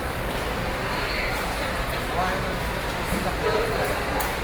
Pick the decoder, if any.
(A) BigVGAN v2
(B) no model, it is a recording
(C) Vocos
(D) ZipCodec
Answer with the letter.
A